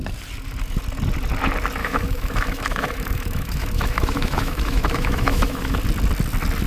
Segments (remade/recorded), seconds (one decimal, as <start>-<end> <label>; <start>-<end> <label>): 0.0-1.8 recorded; 1.8-5.8 remade; 5.8-6.7 recorded